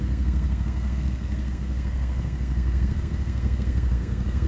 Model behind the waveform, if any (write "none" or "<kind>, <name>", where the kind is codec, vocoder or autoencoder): codec, SNAC